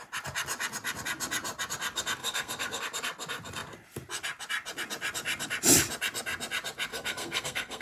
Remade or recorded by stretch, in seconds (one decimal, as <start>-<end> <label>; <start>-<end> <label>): 0.0-2.2 recorded; 2.2-2.8 remade; 2.8-6.9 recorded; 6.9-7.8 remade